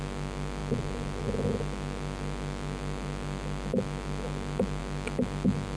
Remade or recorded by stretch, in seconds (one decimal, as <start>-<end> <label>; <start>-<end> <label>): 0.0-5.8 recorded